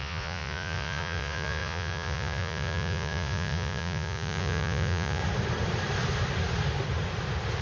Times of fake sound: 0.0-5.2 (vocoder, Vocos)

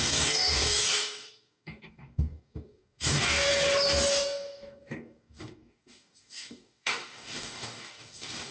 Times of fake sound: 0.0-3.5 (codec, DAC); 4.1-8.5

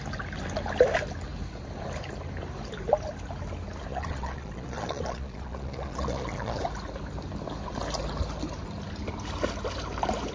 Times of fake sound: 3.9-6.6 (vocoder, Vocos)